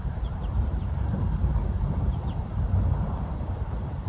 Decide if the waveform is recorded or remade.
remade